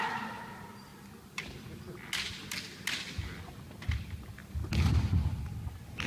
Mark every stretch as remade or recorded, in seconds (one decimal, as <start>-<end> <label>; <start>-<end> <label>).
0.0-6.1 recorded

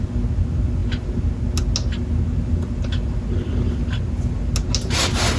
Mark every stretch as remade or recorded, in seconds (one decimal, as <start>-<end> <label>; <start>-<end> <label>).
0.0-5.4 recorded

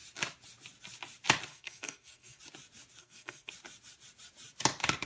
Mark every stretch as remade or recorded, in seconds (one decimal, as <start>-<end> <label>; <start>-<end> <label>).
0.0-1.5 recorded; 1.5-2.4 remade; 2.4-3.0 recorded; 3.0-3.5 remade; 3.5-5.1 recorded

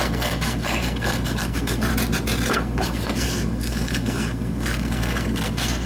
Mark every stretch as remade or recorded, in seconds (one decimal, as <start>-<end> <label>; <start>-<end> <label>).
0.0-1.9 remade; 1.9-2.5 recorded; 2.5-5.9 remade

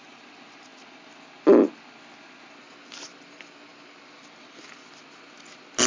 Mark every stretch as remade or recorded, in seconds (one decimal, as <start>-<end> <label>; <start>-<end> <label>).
0.0-5.9 recorded

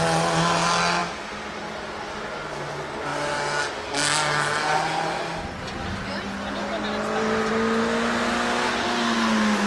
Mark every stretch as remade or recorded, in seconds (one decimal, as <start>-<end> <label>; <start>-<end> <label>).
0.0-9.7 recorded